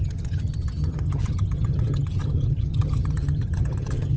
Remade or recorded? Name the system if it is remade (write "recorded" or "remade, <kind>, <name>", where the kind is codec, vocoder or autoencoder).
remade, vocoder, HiFi-GAN